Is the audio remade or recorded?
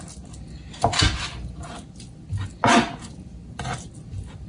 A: recorded